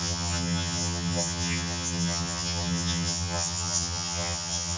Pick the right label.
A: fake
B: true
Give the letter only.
A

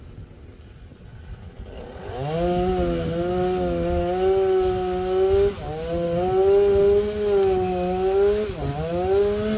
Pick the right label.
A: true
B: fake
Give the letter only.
A